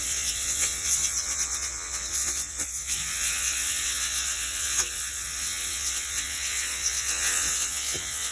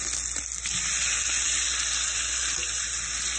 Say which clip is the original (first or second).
second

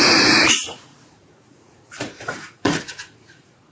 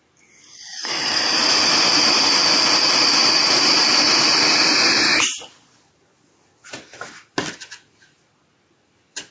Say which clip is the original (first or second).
second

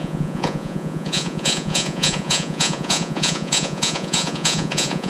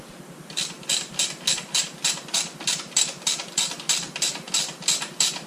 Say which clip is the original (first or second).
second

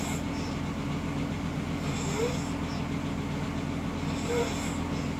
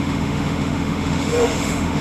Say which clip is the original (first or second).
first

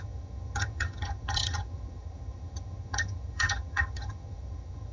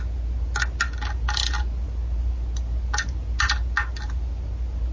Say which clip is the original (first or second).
second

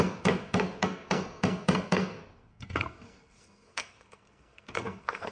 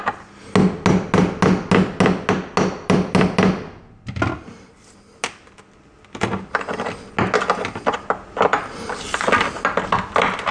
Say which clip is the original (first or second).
second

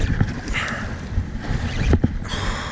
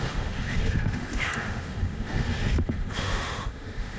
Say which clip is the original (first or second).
first